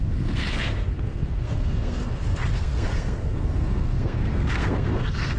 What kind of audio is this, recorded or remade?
remade